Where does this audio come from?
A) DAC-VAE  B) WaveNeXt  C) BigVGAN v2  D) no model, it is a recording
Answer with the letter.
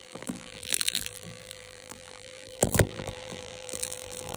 C